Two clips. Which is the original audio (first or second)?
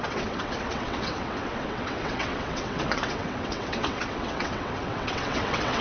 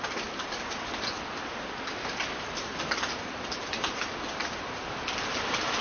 second